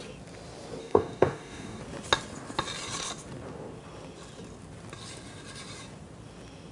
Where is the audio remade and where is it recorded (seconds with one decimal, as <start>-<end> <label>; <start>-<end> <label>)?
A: 0.0-0.8 recorded; 0.8-1.8 remade; 1.8-6.7 recorded